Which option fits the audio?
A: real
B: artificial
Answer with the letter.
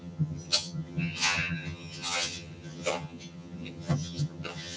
B